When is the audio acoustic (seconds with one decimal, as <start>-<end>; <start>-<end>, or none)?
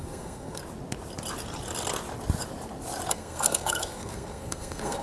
0.6-3.1